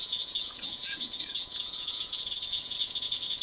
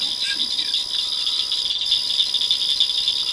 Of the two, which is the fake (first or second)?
first